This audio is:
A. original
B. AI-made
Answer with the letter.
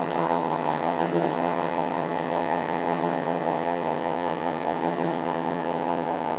B